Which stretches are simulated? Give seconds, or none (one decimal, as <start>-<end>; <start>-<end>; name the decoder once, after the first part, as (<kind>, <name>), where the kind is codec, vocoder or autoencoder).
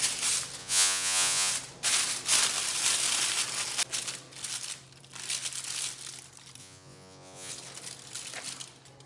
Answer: 0.6-1.5 (vocoder, Vocos); 6.6-7.5